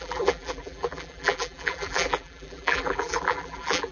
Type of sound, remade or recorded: remade